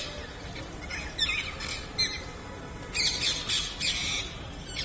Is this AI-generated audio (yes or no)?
no